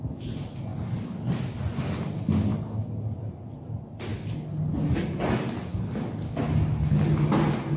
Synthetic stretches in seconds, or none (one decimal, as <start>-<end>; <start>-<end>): none